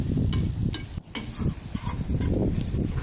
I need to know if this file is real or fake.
real